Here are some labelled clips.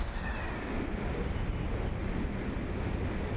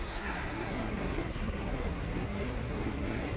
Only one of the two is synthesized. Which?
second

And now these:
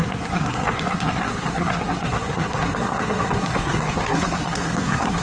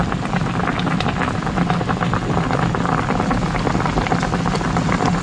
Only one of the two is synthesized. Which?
first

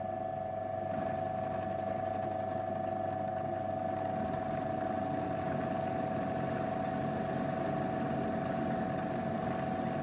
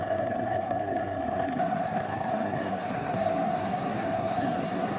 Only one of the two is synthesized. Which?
second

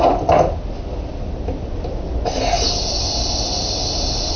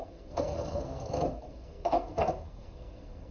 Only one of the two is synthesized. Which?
second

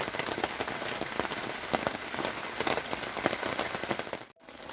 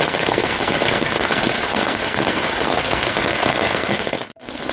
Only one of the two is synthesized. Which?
second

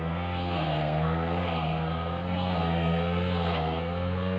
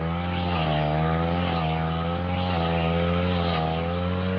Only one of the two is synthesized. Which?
first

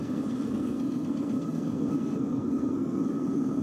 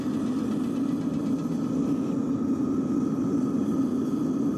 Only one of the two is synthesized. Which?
first